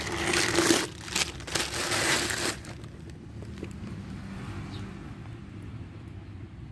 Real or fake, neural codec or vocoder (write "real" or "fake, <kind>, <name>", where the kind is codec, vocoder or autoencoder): real